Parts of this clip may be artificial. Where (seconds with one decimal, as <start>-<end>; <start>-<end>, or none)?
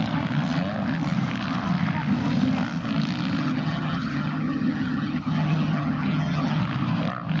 3.4-6.6